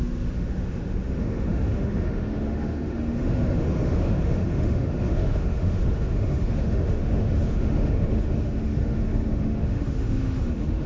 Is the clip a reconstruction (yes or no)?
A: yes